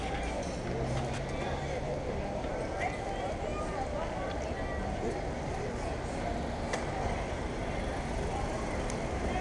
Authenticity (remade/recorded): recorded